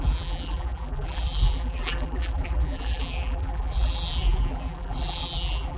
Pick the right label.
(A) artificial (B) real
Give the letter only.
A